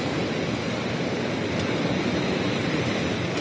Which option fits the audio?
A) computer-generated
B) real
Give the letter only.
A